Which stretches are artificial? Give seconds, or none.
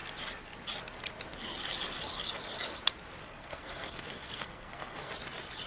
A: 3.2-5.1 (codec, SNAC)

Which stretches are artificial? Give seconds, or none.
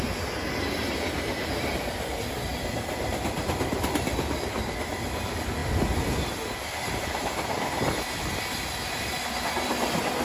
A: 2.5-4.7 (vocoder, BigVGAN v2)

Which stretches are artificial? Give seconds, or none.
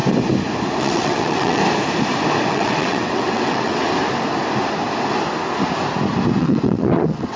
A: 0.8-1.6 (vocoder, WaveNeXt); 2.5-3.8; 6.4-7.4